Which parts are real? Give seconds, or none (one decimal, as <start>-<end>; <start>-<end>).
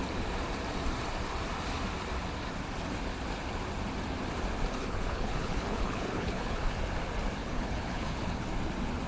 0.0-4.8; 6.6-7.4; 8.4-9.1